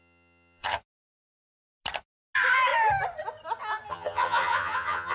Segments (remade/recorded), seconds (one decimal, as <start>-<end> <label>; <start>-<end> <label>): 0.0-0.8 remade; 0.8-3.9 recorded; 3.9-5.1 remade